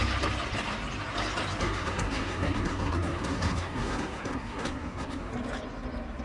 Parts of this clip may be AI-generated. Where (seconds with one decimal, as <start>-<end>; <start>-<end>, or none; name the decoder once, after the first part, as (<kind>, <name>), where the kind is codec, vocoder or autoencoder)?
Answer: 1.6-5.3 (codec, SNAC)